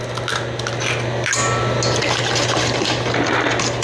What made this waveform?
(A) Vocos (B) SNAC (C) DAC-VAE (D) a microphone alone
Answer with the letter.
D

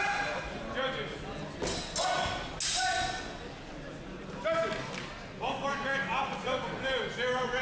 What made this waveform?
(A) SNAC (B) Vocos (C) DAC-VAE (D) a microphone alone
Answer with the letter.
D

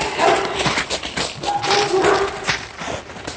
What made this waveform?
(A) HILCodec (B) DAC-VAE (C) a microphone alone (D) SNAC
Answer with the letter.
C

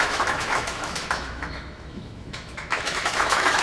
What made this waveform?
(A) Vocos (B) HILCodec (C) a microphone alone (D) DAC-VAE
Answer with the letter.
D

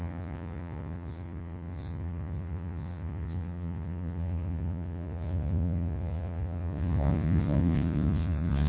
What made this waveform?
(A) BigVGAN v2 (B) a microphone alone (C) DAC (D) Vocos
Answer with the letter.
D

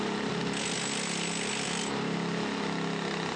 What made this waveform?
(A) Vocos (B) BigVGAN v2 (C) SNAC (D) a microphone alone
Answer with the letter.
D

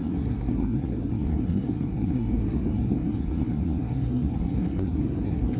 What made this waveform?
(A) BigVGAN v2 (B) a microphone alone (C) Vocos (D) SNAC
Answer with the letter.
D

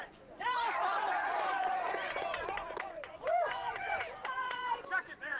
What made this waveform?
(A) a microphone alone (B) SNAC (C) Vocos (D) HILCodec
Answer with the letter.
C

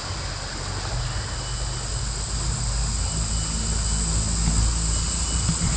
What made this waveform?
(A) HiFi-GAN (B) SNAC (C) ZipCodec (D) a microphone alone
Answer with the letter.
D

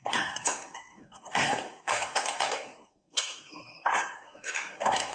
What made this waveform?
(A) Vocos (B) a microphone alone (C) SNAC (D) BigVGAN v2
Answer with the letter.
C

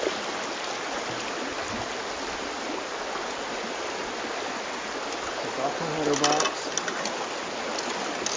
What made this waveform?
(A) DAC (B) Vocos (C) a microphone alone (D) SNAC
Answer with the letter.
C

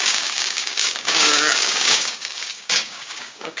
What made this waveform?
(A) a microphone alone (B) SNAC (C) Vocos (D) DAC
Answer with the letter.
D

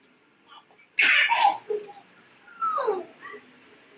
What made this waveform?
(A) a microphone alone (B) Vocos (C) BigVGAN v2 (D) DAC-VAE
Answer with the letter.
A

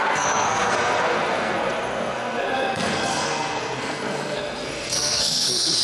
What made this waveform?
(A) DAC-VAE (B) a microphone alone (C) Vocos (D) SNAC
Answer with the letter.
D